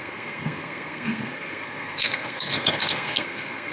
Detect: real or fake fake